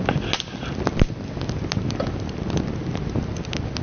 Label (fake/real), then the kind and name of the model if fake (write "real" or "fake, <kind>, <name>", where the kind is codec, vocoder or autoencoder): real